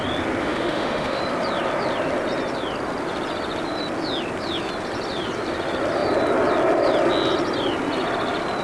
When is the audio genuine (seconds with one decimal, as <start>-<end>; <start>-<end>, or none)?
0.0-0.4; 1.2-8.6